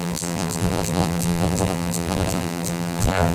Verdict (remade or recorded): remade